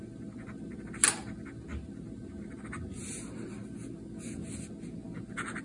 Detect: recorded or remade recorded